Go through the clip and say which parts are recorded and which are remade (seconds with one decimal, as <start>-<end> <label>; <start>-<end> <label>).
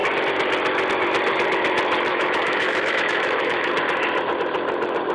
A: 0.0-2.1 recorded; 2.1-3.7 remade; 3.7-5.1 recorded